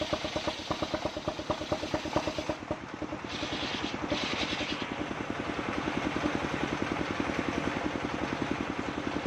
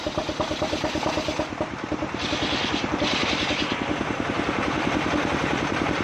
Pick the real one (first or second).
first